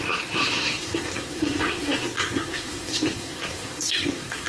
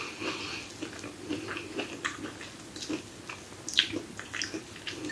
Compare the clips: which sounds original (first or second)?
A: second